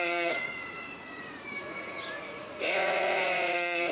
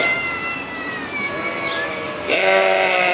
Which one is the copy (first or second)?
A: first